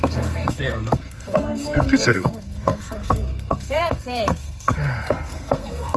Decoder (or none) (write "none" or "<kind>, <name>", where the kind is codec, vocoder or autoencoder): codec, SNAC